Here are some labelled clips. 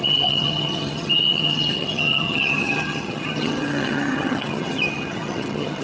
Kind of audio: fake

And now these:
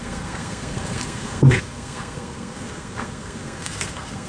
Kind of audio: fake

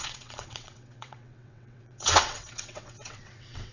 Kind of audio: fake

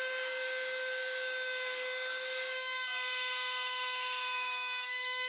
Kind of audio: fake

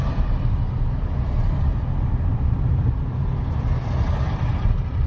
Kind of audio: fake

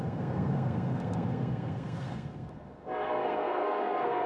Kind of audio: fake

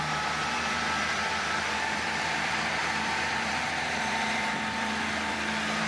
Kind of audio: fake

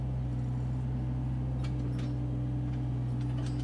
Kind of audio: real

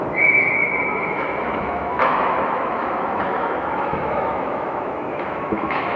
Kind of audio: fake